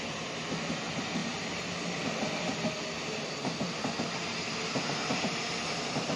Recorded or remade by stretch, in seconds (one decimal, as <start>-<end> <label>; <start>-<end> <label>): 0.0-6.2 recorded